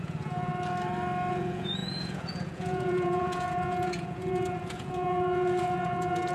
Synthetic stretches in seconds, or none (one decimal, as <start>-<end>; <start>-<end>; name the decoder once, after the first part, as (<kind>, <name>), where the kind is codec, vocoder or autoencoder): 0.0-0.5 (vocoder, Vocos); 1.3-6.3